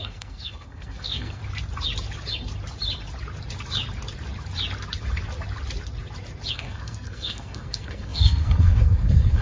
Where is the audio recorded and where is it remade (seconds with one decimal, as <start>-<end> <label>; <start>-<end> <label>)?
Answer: 0.0-1.4 remade; 1.4-6.5 recorded; 6.5-9.4 remade